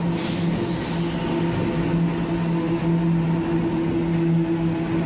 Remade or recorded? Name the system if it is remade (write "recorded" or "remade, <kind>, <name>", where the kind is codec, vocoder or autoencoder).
recorded